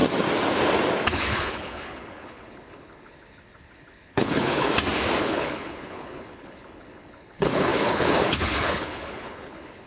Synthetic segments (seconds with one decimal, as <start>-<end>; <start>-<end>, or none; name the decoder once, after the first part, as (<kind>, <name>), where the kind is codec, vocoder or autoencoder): 1.1-4.7 (codec, HILCodec); 5.2-9.9